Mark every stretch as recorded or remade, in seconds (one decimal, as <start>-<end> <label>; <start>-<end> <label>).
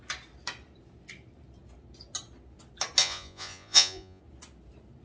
0.0-3.0 recorded; 3.0-4.2 remade; 4.2-5.0 recorded